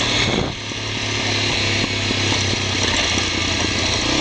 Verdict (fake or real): real